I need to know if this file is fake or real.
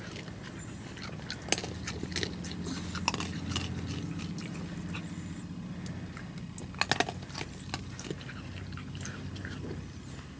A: real